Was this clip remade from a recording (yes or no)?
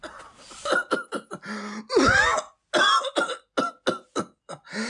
no